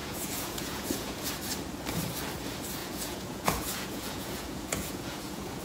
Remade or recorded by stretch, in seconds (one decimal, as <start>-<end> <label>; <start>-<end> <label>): 0.0-1.3 remade; 1.3-2.8 recorded; 2.8-5.6 remade

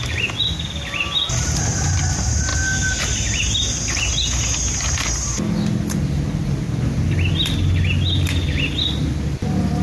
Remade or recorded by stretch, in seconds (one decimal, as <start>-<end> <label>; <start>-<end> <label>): 0.0-9.8 recorded